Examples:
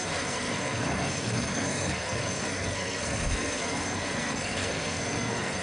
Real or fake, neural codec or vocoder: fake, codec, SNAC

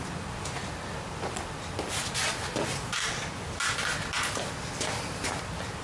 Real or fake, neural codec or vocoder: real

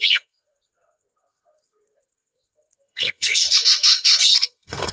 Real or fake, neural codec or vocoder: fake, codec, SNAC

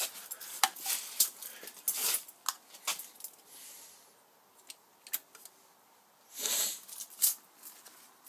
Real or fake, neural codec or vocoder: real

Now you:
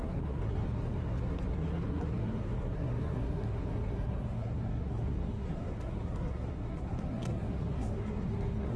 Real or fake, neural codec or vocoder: fake, codec, SNAC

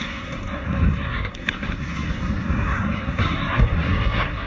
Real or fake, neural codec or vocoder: fake, codec, SNAC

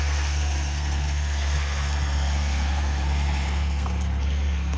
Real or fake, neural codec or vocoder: fake, codec, SNAC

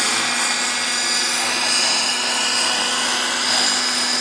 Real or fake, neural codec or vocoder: real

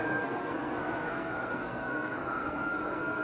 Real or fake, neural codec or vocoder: fake, codec, SNAC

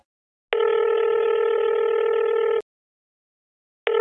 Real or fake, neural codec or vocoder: real